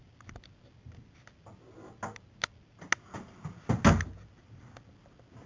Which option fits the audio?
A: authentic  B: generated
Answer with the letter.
A